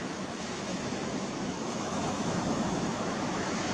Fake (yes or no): yes